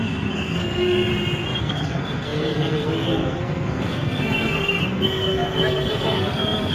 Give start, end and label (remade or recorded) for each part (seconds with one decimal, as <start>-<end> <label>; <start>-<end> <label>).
0.0-1.1 remade; 1.1-1.6 recorded; 1.6-6.7 remade